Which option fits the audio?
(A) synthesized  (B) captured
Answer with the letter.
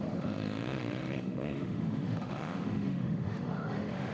A